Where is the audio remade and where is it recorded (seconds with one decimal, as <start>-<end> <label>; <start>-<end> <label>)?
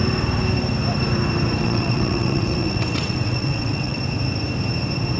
0.0-1.6 recorded; 1.6-4.0 remade; 4.0-5.2 recorded